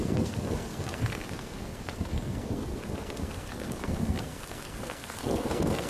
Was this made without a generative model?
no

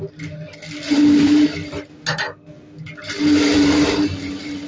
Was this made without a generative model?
yes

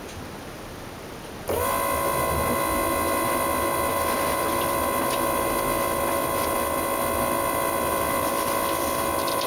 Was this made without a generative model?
yes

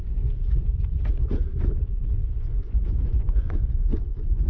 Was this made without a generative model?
no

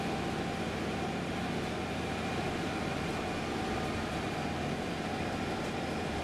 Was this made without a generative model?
yes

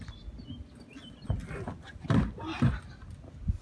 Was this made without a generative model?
yes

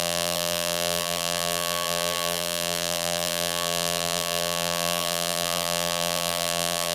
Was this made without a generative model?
no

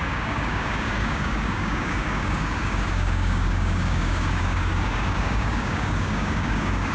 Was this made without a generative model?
no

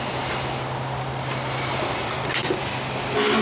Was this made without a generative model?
yes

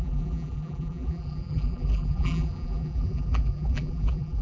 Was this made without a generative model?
no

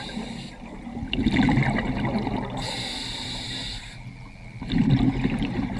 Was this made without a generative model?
yes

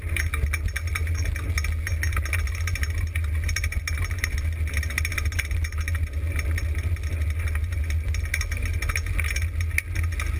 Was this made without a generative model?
yes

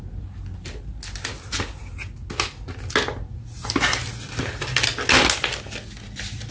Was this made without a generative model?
yes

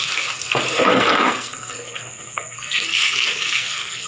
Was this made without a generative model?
no